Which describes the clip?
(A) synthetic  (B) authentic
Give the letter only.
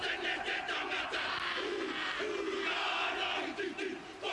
B